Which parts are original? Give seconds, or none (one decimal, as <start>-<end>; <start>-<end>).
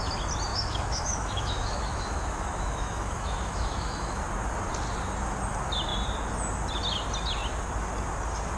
0.0-0.5; 4.2-8.6